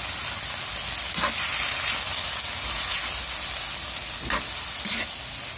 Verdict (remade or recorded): recorded